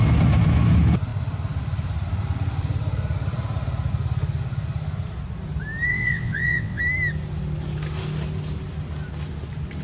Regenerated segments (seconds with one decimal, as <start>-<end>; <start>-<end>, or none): 5.9-6.8